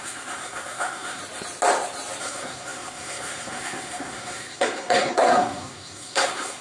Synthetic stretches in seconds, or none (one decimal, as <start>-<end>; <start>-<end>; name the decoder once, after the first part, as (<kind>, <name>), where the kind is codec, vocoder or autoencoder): 0.0-1.2 (codec, SNAC); 2.2-6.6